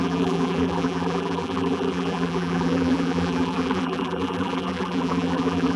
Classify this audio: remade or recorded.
remade